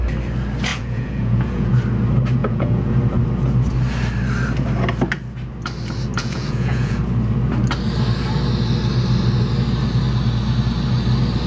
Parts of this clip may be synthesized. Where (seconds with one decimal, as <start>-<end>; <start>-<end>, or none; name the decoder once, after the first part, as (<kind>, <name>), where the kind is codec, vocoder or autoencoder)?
0.7-1.7 (vocoder, Vocos); 2.4-3.0; 6.2-7.0